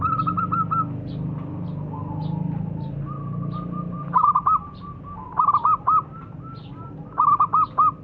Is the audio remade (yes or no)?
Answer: no